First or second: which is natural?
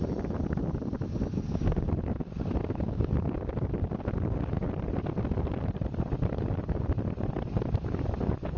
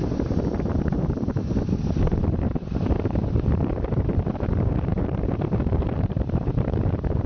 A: first